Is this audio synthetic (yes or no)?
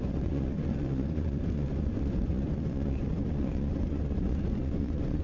yes